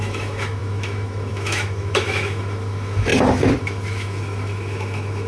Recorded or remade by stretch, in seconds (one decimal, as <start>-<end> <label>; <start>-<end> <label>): 0.0-3.1 remade; 3.1-3.6 recorded; 3.6-5.3 remade